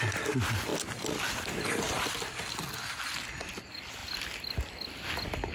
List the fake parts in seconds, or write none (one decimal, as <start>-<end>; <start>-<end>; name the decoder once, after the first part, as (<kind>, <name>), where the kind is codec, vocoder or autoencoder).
none